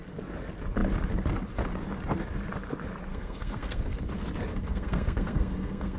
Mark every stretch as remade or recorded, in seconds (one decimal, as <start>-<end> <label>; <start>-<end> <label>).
0.0-3.1 recorded; 3.1-4.0 remade; 4.0-4.5 recorded; 4.5-6.0 remade